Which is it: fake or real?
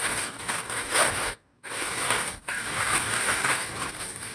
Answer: fake